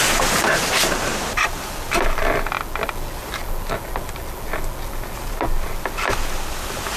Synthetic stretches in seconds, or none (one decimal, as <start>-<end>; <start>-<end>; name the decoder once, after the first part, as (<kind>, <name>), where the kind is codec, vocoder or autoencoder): none